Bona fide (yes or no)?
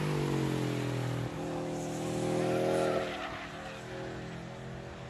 yes